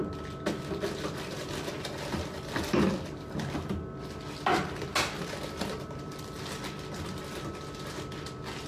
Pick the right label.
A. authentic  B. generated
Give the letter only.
A